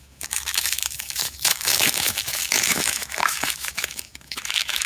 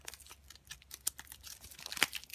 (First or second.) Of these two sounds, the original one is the second